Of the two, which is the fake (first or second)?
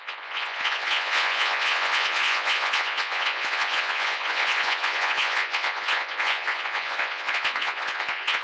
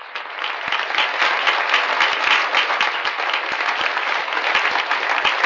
first